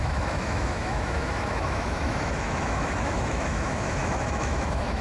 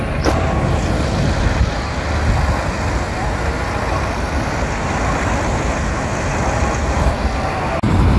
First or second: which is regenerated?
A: first